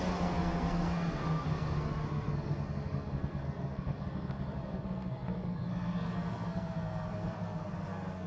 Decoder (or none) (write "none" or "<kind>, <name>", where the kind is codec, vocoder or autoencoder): codec, SNAC